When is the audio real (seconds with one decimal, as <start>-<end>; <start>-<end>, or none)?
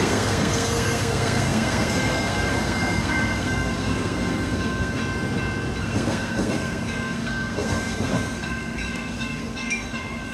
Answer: 5.0-5.8